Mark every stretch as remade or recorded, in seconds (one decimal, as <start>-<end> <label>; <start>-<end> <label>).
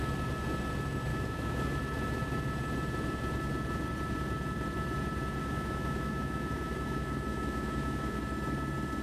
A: 0.0-1.1 recorded; 1.1-1.8 remade; 1.8-5.4 recorded; 5.4-8.2 remade; 8.2-9.0 recorded